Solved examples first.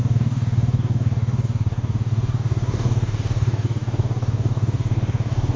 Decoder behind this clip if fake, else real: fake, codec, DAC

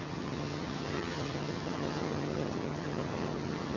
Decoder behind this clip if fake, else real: fake, vocoder, HiFi-GAN